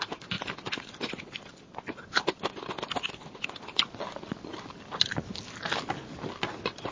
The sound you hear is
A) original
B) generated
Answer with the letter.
A